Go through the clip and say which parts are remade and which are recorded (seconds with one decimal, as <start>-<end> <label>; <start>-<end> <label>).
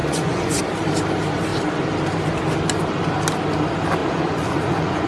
0.0-0.6 remade; 0.6-4.0 recorded; 4.0-5.1 remade